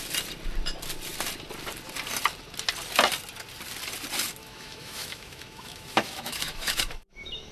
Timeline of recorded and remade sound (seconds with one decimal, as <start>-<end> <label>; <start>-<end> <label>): 0.0-4.4 recorded; 4.4-7.5 remade